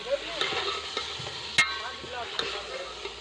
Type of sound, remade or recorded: recorded